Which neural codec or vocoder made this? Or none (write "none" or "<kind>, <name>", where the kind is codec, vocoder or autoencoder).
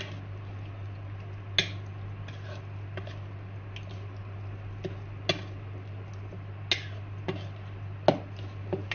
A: none